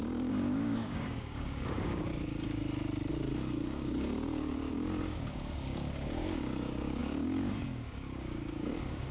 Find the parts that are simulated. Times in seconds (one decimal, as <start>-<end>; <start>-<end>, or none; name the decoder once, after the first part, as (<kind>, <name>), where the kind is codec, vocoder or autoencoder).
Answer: 0.0-2.1 (codec, DAC); 3.1-9.1